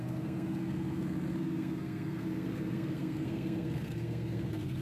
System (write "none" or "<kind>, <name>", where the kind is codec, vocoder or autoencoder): codec, SNAC